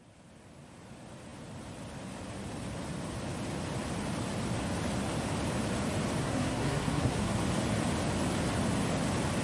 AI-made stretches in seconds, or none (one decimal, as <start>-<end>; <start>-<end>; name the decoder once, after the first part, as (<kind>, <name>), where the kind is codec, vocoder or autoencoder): 6.2-7.4 (codec, SNAC)